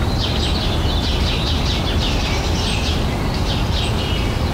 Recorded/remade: recorded